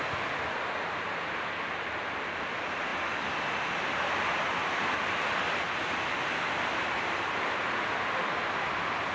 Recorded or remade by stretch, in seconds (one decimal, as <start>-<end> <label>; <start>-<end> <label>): 0.0-9.1 recorded